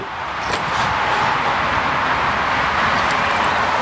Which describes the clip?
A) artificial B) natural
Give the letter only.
B